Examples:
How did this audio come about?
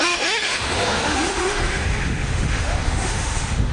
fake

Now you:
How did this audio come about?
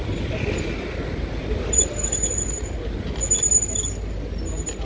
real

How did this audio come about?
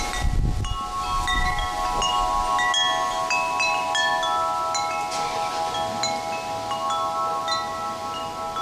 real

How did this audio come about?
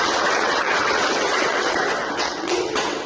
fake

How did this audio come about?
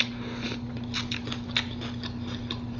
real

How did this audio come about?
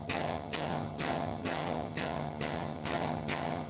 fake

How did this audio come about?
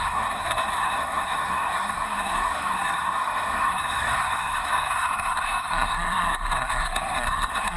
fake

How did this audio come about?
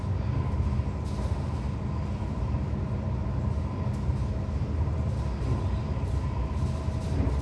real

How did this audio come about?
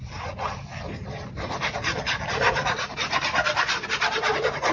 fake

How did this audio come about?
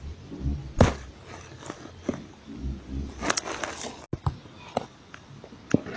real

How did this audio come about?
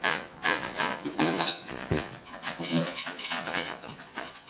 fake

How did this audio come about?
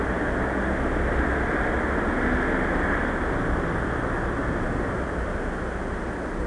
real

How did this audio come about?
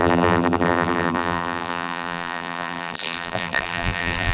fake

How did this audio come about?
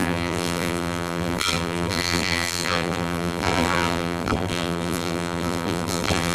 fake